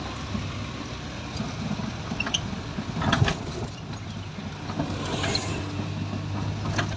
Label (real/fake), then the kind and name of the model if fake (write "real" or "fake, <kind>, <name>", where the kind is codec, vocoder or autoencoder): real